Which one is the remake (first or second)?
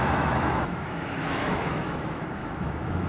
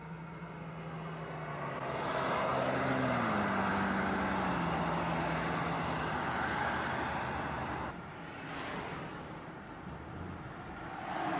first